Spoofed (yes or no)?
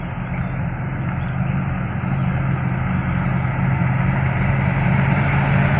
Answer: no